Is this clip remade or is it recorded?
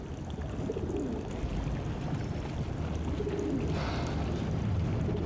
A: recorded